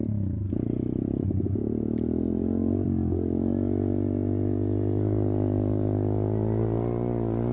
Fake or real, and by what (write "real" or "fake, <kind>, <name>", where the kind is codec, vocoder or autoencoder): real